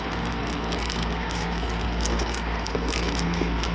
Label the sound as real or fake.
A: fake